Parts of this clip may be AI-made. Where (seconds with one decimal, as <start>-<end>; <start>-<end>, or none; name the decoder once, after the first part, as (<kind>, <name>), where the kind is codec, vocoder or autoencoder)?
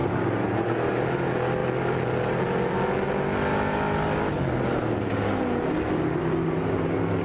0.0-0.7 (vocoder, BigVGAN v2)